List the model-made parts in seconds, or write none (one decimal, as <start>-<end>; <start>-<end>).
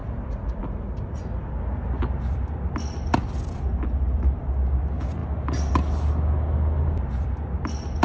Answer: 3.2-4.4